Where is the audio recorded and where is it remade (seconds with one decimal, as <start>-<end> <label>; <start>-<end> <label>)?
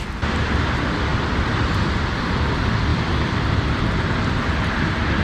0.0-1.1 recorded; 1.1-2.2 remade; 2.2-2.9 recorded; 2.9-3.4 remade; 3.4-5.2 recorded